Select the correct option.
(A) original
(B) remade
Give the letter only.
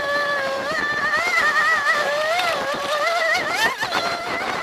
B